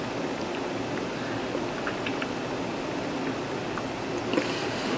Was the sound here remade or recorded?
recorded